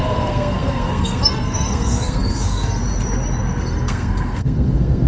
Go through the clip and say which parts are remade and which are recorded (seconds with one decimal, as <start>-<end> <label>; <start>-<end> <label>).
0.0-2.8 remade; 2.8-3.6 recorded; 3.6-5.1 remade